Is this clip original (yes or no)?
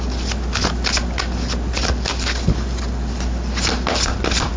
yes